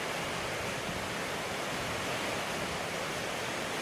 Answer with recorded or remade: recorded